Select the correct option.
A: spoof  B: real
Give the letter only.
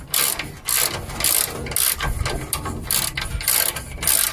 B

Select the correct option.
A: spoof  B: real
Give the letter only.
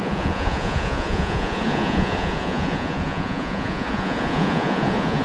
A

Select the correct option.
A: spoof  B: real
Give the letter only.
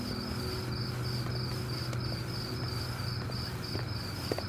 B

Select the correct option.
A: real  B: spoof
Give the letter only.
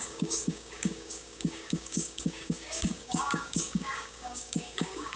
B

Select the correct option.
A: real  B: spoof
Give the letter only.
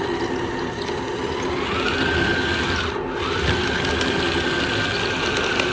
A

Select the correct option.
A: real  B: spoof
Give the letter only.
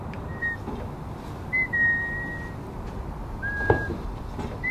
A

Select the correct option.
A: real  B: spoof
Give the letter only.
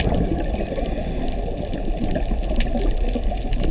A